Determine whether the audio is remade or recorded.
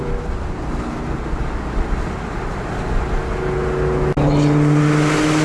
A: recorded